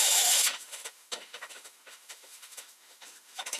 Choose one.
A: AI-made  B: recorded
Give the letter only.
A